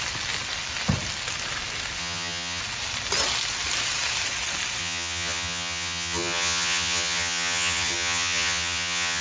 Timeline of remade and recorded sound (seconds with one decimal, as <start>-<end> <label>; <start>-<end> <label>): 0.0-2.0 recorded; 2.0-2.6 remade; 2.6-4.8 recorded; 4.8-9.2 remade